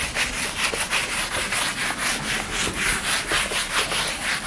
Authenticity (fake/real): real